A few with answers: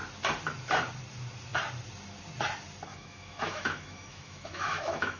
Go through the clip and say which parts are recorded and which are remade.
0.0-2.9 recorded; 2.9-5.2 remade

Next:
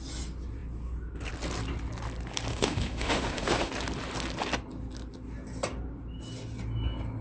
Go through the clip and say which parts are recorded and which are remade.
0.0-2.5 recorded; 2.5-3.7 remade; 3.7-7.2 recorded

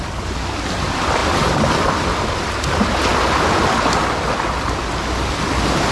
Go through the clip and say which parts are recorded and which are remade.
0.0-5.9 recorded